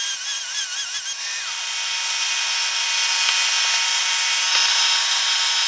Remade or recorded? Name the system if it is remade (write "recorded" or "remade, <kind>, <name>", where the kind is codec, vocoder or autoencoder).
recorded